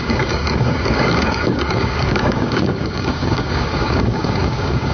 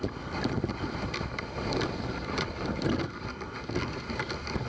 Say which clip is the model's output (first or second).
first